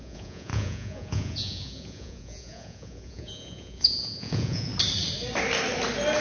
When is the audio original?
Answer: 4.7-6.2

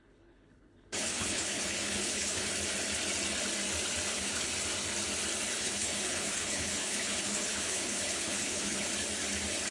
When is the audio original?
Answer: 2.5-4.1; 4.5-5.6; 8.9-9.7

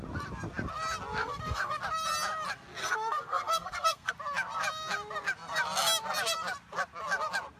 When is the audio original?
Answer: 0.0-1.2; 1.8-2.8; 4.1-7.6

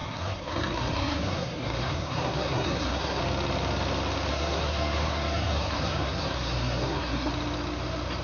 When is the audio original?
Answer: 3.2-4.3; 7.3-8.2

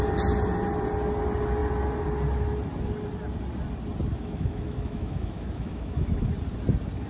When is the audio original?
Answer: 0.0-4.1; 6.3-7.1

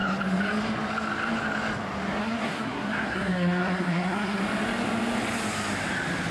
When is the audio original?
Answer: 0.0-2.2; 4.4-6.3

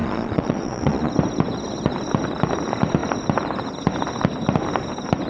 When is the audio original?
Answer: 1.1-5.3

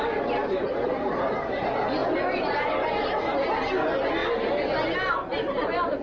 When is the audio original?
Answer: 0.0-0.4; 1.3-6.0